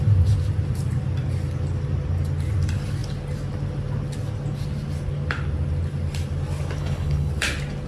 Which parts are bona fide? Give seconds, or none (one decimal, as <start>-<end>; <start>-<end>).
0.0-6.8; 7.3-7.9